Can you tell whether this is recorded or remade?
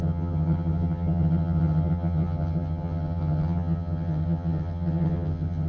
remade